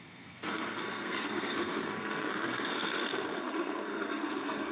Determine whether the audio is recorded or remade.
remade